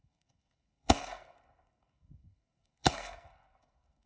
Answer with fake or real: fake